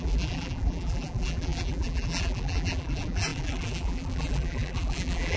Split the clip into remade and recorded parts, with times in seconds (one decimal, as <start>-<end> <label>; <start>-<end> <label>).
0.0-5.4 remade